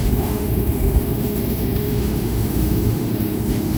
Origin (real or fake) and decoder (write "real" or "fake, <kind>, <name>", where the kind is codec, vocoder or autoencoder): fake, autoencoder, DAC-VAE